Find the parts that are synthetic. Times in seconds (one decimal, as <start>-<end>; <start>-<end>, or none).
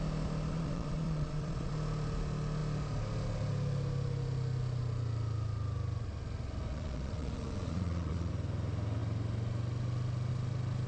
0.5-1.7; 6.7-8.3